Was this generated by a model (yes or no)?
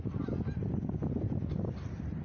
no